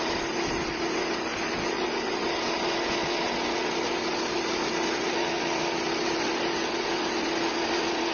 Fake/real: real